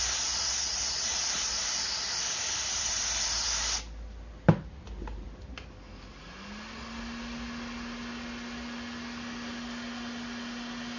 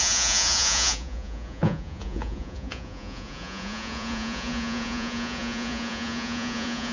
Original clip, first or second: first